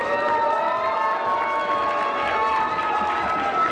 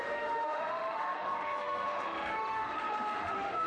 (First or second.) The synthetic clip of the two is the second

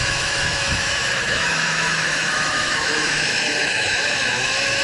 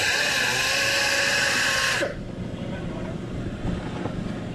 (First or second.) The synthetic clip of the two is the first